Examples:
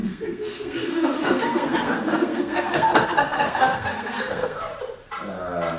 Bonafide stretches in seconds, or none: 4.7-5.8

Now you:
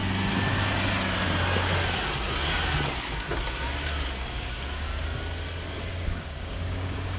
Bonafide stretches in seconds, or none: 0.0-4.3; 4.9-5.9